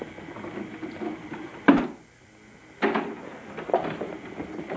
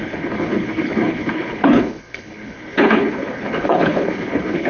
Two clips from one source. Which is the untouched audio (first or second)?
first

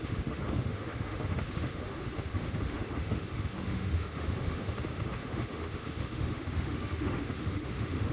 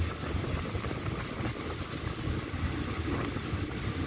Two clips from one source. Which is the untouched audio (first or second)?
second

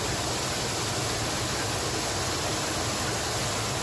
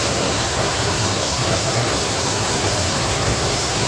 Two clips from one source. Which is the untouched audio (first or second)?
first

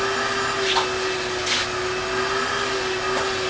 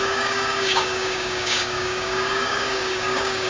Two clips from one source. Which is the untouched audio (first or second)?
first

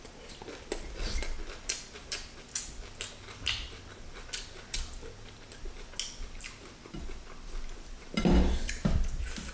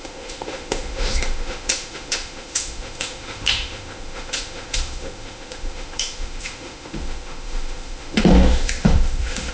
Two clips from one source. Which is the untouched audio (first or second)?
first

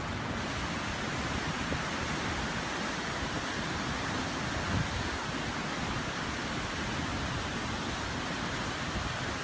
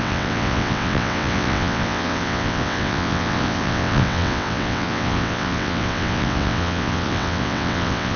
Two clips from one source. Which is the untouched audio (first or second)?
first